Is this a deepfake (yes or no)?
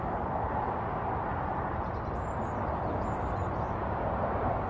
no